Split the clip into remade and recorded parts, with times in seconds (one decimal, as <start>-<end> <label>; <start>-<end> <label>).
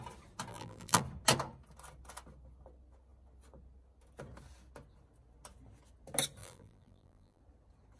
0.0-0.5 recorded; 0.5-1.0 remade; 1.0-6.4 recorded; 6.4-7.4 remade; 7.4-8.0 recorded